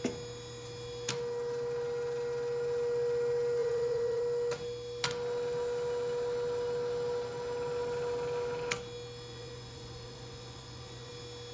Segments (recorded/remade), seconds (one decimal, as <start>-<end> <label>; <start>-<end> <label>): 0.0-3.6 recorded; 3.6-4.2 remade; 4.2-9.3 recorded; 9.3-11.1 remade; 11.1-11.5 recorded